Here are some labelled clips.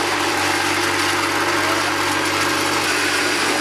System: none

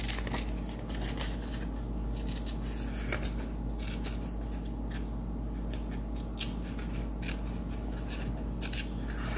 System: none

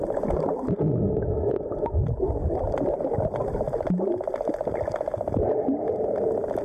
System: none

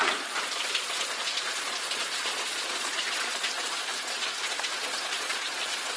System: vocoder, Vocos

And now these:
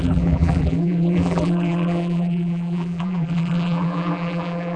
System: vocoder, BigVGAN v2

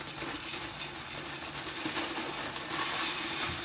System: none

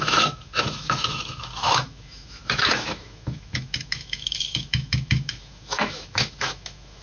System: autoencoder, DAC-VAE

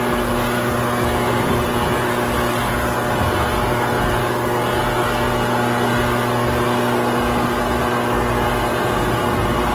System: none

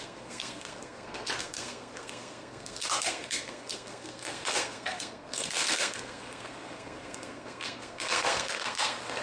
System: codec, SNAC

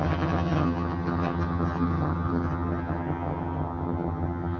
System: vocoder, HiFi-GAN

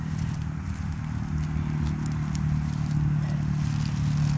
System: none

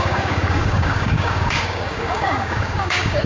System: codec, DAC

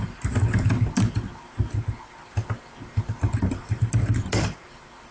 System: none